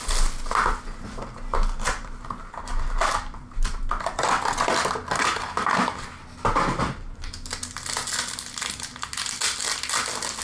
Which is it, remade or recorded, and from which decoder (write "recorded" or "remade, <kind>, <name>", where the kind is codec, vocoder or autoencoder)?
recorded